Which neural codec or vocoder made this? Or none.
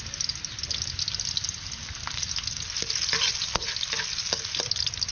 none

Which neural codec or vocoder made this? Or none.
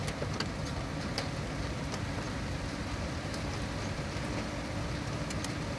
vocoder, BigVGAN v2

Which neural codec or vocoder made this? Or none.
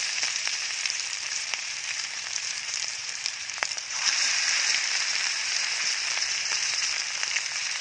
vocoder, BigVGAN v2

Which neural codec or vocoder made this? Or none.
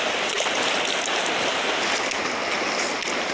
none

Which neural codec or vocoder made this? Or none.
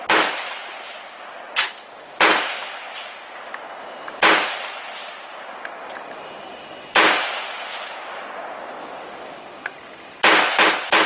none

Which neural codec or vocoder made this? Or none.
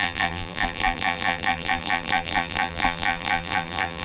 vocoder, BigVGAN v2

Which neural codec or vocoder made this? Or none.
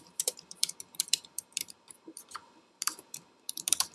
vocoder, BigVGAN v2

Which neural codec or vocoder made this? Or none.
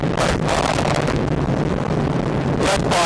vocoder, BigVGAN v2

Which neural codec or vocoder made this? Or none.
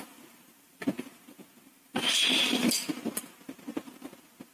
none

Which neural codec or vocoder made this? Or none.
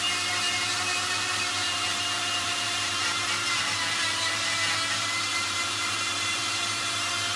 vocoder, BigVGAN v2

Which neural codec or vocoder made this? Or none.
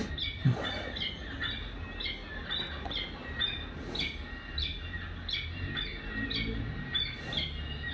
none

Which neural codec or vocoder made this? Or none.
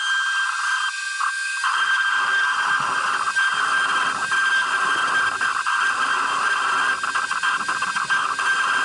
none